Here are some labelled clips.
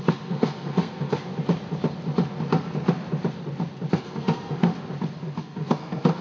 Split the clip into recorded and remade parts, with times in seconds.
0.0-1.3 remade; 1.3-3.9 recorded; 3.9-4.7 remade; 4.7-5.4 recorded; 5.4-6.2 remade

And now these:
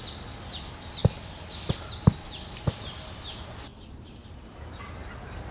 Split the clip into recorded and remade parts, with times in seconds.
0.0-5.5 recorded

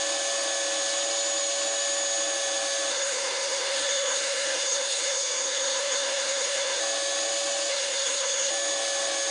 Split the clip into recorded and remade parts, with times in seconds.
0.0-2.9 recorded; 2.9-6.8 remade; 6.8-7.7 recorded; 7.7-8.5 remade; 8.5-9.3 recorded

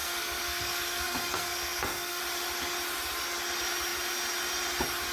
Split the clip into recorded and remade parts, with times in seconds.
0.0-2.2 remade; 2.2-5.1 recorded

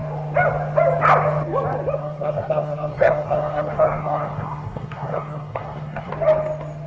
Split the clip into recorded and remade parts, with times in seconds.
0.0-2.0 recorded; 2.0-6.1 remade; 6.1-6.9 recorded